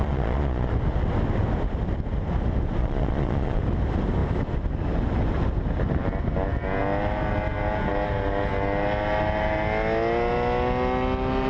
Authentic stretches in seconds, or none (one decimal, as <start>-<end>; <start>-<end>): 0.7-2.8; 3.6-11.5

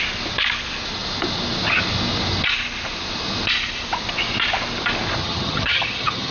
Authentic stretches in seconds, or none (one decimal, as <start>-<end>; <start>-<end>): 0.0-5.2